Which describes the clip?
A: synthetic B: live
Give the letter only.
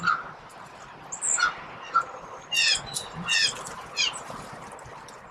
B